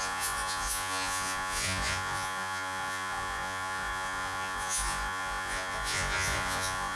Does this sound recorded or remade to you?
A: remade